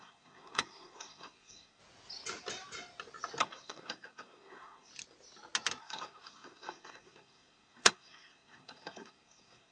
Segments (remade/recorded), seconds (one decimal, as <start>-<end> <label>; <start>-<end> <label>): 0.0-1.8 remade; 1.8-3.4 recorded; 3.4-4.9 remade; 4.9-5.8 recorded; 5.8-9.7 remade